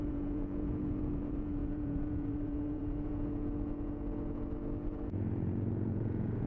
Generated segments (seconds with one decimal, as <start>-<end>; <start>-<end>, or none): 0.0-6.5